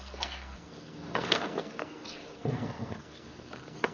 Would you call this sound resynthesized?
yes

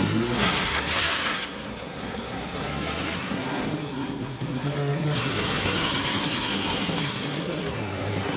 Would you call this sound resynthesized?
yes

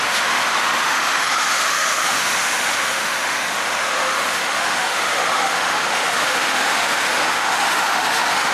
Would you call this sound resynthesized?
yes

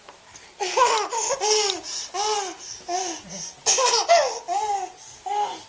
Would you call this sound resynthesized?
no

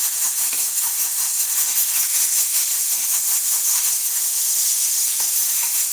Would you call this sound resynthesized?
yes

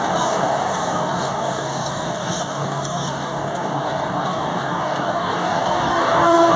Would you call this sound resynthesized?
yes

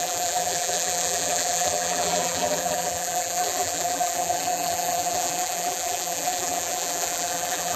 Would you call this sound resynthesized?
yes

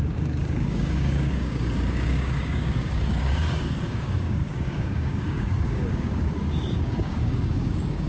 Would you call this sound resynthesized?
yes